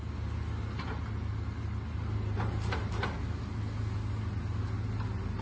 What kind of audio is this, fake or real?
real